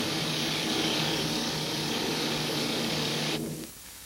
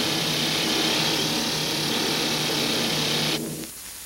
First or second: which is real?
second